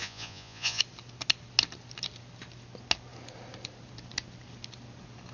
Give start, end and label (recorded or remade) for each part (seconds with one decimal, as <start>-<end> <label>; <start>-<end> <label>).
0.0-0.8 remade; 0.8-5.3 recorded